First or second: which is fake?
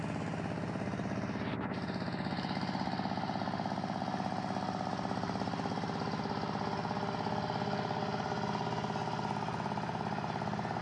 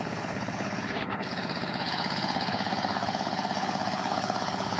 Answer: second